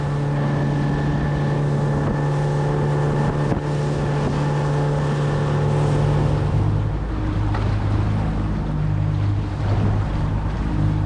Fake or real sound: real